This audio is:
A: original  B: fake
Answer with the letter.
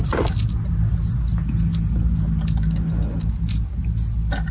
A